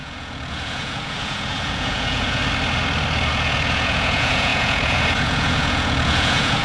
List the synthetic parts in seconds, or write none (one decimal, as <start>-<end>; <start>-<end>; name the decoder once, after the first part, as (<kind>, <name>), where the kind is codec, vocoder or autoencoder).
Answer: 0.0-2.4 (vocoder, Vocos); 3.3-6.6